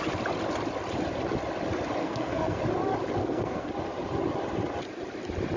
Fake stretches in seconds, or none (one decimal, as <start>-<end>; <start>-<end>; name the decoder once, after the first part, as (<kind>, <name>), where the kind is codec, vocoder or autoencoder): 2.0-2.6 (codec, SNAC); 3.2-3.7